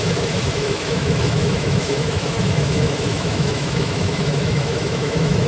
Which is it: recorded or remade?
remade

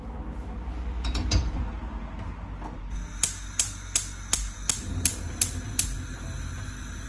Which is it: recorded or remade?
recorded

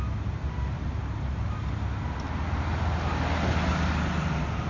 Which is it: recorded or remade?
recorded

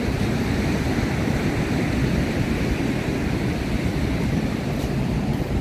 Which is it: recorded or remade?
recorded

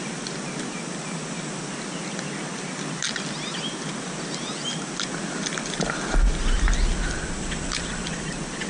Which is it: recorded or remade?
recorded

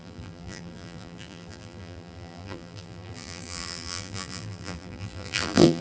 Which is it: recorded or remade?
remade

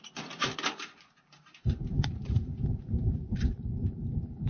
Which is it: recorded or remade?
remade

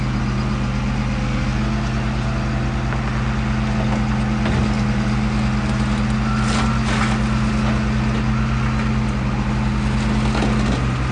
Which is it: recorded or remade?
recorded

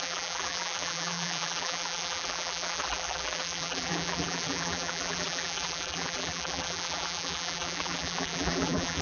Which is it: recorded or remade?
remade